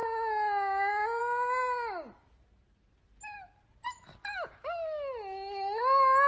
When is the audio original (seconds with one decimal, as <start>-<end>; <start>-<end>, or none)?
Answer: 0.0-6.3